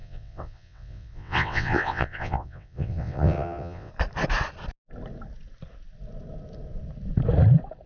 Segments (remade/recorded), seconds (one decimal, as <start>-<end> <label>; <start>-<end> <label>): 0.0-3.9 remade; 3.9-7.9 recorded